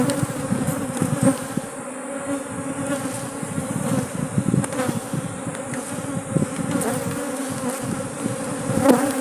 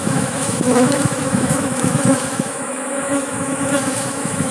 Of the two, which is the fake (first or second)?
second